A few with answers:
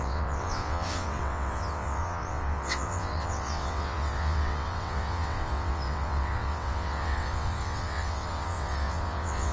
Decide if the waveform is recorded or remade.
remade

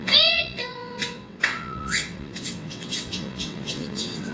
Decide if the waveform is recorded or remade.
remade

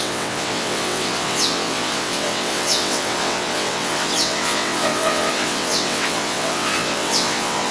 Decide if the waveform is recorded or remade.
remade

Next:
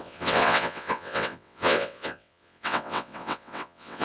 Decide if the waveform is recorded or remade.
remade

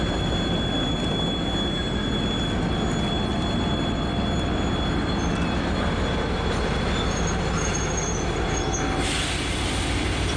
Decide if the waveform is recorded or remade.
recorded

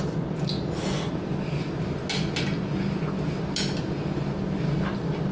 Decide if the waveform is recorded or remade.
recorded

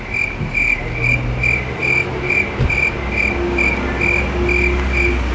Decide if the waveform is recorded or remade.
recorded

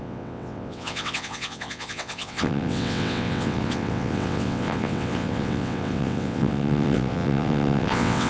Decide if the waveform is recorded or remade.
remade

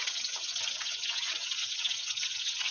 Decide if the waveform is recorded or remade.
remade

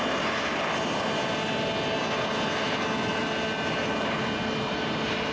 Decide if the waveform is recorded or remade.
recorded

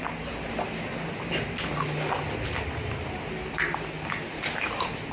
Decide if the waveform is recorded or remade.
recorded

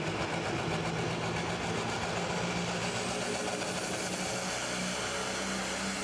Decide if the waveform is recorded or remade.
recorded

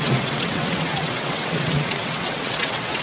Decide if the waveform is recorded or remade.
remade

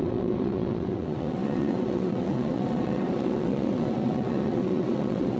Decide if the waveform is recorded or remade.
remade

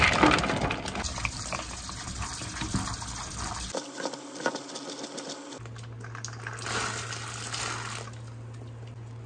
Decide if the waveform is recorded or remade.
recorded